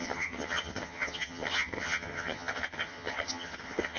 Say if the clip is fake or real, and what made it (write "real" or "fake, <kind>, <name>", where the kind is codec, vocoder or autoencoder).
fake, vocoder, HiFi-GAN